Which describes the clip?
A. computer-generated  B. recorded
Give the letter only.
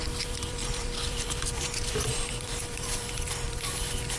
A